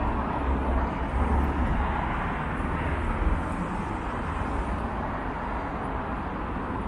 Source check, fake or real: real